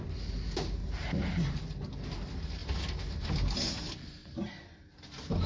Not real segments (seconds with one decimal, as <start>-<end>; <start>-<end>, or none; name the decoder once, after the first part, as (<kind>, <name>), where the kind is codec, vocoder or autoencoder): 0.8-1.6 (vocoder, BigVGAN v2); 4.2-4.9